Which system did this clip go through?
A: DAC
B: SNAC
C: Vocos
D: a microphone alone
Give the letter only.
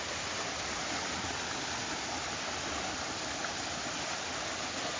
D